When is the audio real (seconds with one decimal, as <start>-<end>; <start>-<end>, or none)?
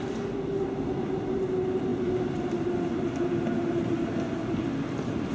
0.0-5.3